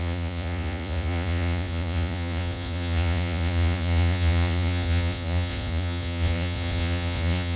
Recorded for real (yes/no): no